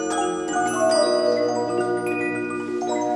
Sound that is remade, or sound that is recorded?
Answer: recorded